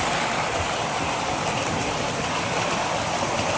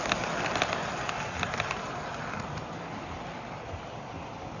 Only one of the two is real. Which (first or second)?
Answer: second